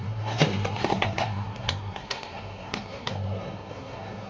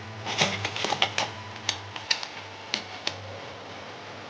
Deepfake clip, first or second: first